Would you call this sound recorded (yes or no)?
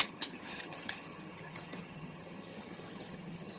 no